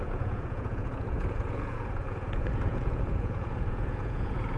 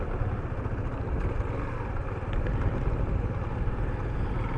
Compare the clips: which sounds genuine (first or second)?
second